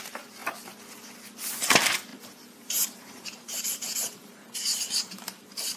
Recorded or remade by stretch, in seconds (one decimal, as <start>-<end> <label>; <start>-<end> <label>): 0.0-2.1 recorded; 2.1-5.8 remade